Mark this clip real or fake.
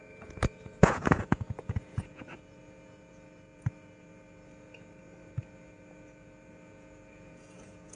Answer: fake